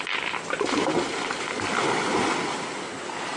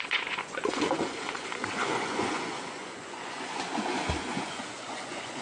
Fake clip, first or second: second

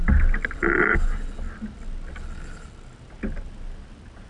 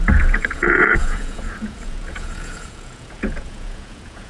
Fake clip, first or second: second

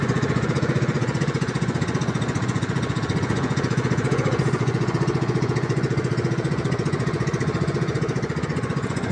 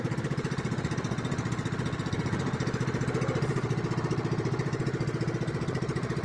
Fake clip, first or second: first